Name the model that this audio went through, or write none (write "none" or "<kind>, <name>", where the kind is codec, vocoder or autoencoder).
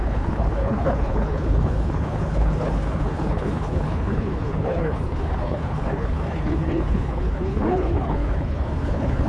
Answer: codec, HILCodec